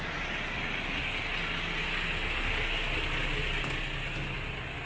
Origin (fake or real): real